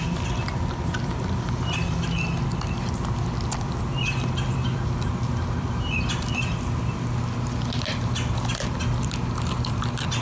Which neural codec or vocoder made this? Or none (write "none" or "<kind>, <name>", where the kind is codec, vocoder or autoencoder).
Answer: none